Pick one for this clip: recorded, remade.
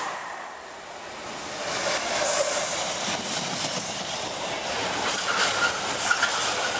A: recorded